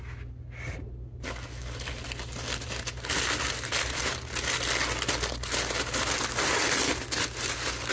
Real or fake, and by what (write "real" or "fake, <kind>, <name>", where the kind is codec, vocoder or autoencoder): real